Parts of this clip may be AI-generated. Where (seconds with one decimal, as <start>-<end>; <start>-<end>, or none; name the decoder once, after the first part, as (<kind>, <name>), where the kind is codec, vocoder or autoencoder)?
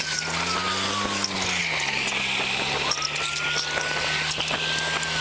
none